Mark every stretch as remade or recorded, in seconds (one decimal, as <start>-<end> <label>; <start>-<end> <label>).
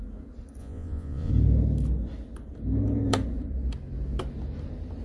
0.0-0.6 recorded; 0.6-1.3 remade; 1.3-5.0 recorded